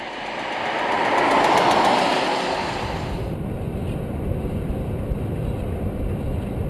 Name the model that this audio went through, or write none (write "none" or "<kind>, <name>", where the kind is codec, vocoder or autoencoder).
none